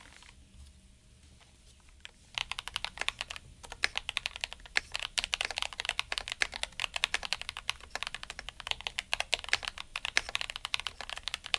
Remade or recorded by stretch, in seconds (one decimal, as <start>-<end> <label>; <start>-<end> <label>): 0.0-9.9 recorded; 9.9-11.1 remade; 11.1-11.6 recorded